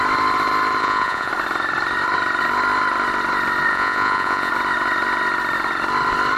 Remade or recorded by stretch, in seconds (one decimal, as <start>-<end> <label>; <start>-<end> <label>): 0.0-0.8 recorded; 0.8-1.3 remade; 1.3-3.7 recorded; 3.7-4.5 remade; 4.5-6.4 recorded